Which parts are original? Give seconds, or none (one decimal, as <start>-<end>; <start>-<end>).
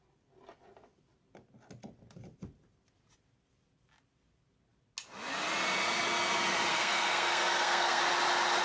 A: 0.0-6.7; 8.0-8.6